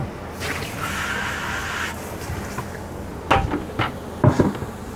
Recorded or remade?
recorded